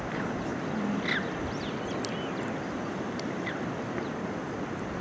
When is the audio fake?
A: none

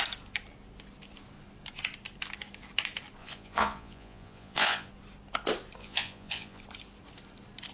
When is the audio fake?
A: 3.2-4.9 (vocoder, Vocos); 5.8-6.6

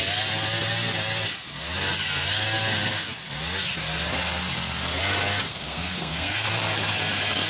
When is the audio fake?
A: 5.5-6.5 (codec, SNAC)

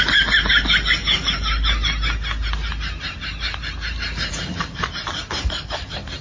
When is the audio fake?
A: none

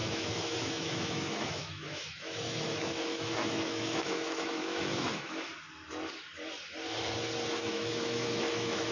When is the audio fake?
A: 0.0-5.5 (autoencoder, DAC-VAE); 7.6-8.9